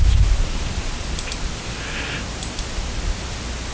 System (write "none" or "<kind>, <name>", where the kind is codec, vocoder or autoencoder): none